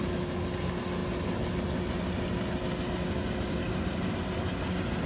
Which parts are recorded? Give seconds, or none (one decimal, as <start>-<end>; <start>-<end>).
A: 0.0-5.1